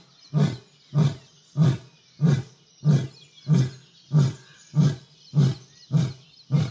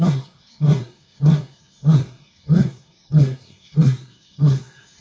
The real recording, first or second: first